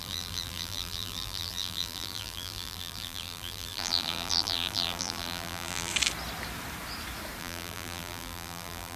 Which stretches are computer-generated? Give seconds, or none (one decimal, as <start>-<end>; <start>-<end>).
0.0-5.9; 7.4-9.0